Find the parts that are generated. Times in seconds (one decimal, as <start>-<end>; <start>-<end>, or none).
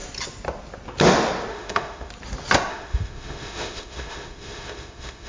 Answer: 1.5-2.1; 2.7-5.3